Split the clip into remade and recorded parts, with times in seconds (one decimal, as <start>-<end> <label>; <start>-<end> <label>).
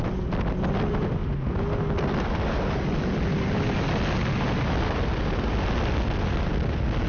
0.0-7.1 recorded